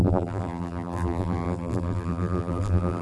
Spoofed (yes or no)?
yes